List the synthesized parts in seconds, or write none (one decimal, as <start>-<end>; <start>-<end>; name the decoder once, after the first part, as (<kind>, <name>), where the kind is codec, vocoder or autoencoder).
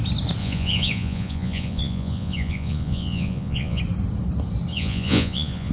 0.4-3.8 (vocoder, Vocos); 4.7-5.7